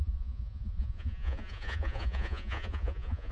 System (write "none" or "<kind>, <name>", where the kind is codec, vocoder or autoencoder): vocoder, Vocos